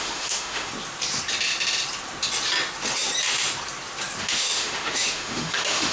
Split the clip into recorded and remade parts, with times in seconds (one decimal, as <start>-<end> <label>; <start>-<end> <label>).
0.0-0.7 remade; 0.7-4.2 recorded; 4.2-5.9 remade